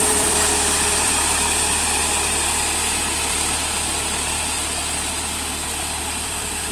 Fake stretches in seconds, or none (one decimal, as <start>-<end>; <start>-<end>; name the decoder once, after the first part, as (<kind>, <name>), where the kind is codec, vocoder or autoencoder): 0.0-2.0 (vocoder, BigVGAN v2); 6.0-6.7